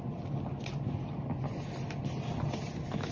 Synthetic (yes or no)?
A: no